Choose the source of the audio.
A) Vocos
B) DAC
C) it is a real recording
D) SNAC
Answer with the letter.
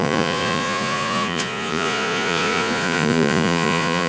A